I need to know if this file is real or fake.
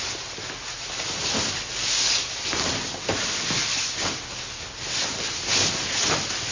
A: real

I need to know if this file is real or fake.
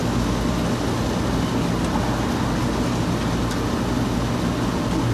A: real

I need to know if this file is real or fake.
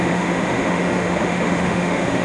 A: fake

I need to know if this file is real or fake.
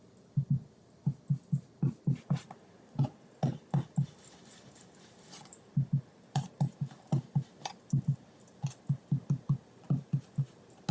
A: real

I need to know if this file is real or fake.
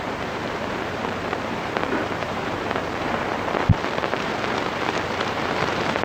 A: fake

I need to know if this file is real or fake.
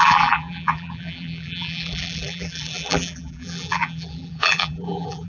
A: fake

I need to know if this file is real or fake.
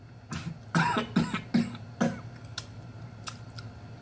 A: real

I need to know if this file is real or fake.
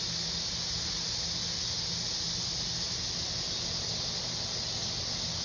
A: real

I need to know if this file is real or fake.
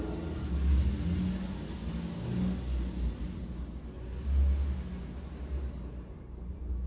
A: real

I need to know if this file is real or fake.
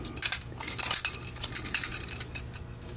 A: real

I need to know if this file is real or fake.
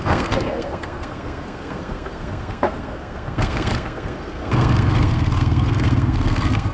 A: fake